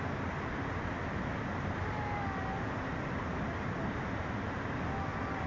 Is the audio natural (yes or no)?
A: yes